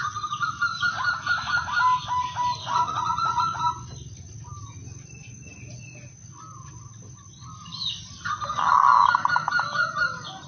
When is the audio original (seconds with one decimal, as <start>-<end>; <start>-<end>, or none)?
0.0-2.6; 3.6-10.5